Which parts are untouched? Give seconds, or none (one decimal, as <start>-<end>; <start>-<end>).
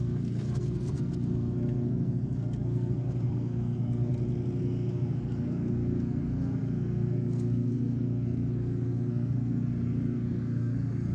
4.1-4.6